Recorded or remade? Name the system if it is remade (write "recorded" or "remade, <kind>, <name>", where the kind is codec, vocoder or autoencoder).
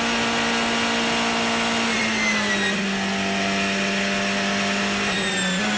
recorded